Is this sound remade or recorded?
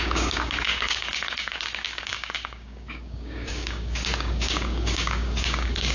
remade